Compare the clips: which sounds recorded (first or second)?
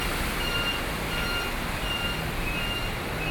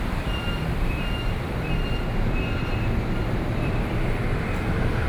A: first